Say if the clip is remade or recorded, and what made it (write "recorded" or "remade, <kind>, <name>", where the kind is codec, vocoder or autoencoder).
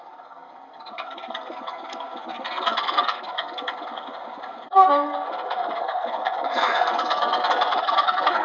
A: remade, codec, SNAC